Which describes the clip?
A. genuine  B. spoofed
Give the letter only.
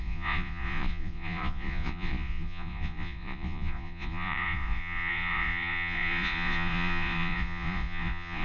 B